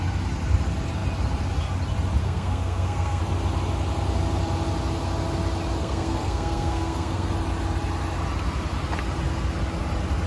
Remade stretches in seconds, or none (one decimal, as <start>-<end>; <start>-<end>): 2.2-3.2; 5.8-7.3